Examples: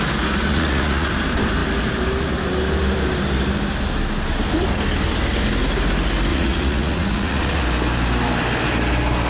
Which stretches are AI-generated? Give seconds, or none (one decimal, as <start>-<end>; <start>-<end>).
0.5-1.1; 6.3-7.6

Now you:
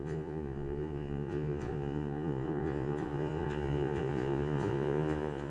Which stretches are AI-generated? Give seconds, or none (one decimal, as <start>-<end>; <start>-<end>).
0.0-5.5

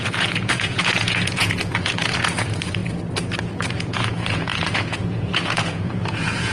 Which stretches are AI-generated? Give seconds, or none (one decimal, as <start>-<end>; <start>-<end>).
0.0-2.8; 3.4-6.5

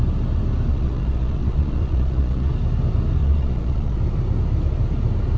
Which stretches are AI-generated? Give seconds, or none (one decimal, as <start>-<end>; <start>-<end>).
0.7-2.5; 3.2-4.0